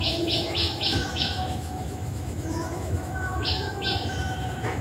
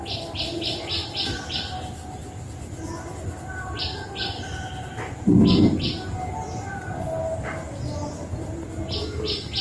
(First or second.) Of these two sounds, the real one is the second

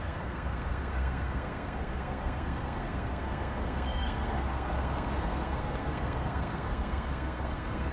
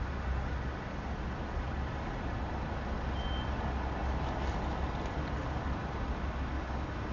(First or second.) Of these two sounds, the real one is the second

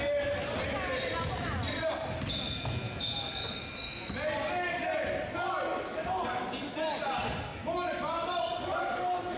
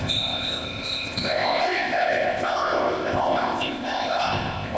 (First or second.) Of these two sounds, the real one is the first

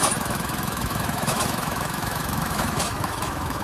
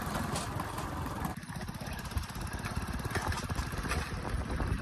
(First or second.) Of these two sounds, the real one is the second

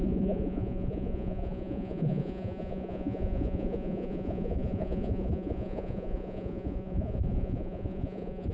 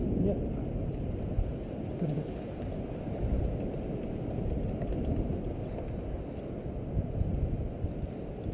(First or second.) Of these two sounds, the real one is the second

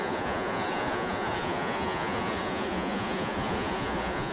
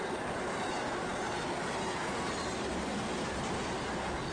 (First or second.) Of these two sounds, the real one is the second